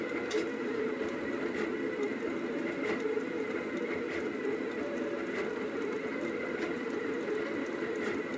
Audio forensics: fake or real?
real